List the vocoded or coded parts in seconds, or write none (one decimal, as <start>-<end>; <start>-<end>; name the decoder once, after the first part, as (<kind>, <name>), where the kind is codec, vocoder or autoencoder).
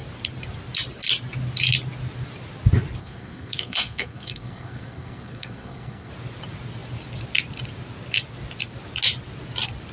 3.0-6.1 (codec, SNAC)